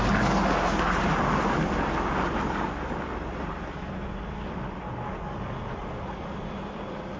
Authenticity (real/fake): real